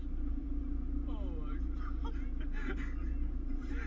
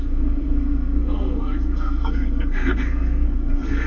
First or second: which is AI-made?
second